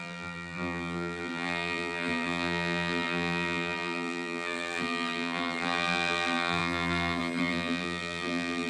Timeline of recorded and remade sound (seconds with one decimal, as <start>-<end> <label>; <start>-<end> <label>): 0.0-8.7 remade